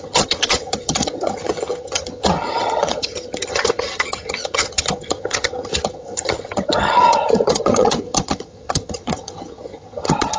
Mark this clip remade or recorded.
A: remade